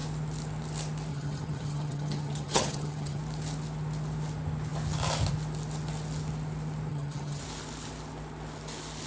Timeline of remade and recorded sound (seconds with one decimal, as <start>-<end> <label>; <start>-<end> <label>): 0.0-1.1 recorded; 1.1-3.2 remade; 3.2-6.9 recorded; 6.9-7.4 remade; 7.4-9.1 recorded